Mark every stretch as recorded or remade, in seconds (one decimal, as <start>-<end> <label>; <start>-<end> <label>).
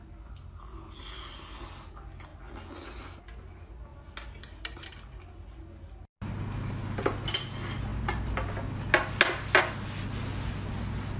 0.0-11.2 recorded